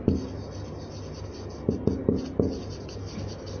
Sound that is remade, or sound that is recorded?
recorded